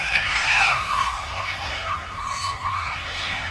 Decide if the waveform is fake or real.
fake